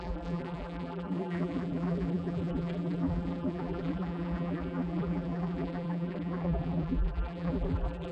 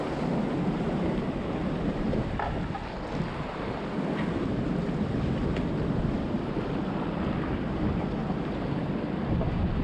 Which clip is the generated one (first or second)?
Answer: first